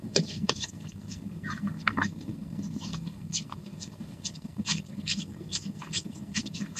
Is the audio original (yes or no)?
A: no